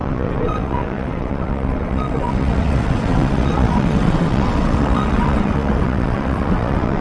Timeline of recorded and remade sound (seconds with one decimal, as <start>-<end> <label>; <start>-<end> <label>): 0.0-7.0 remade